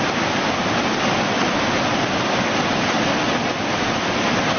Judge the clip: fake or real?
real